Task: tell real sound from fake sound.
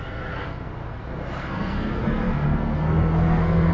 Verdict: fake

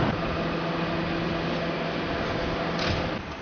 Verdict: real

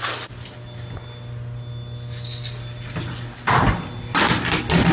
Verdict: real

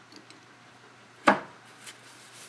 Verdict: fake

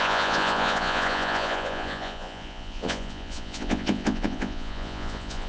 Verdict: fake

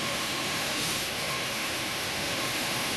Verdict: fake